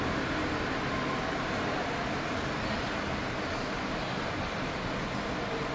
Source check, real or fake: real